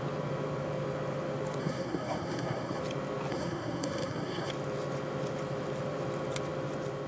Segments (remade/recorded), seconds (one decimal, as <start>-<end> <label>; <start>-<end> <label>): 0.0-1.6 recorded; 1.6-2.8 remade; 2.8-3.3 recorded; 3.3-4.5 remade; 4.5-7.1 recorded